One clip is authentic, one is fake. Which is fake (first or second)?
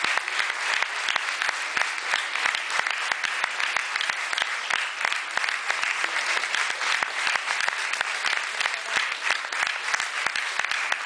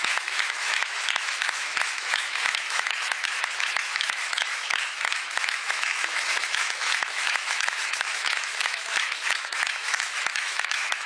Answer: second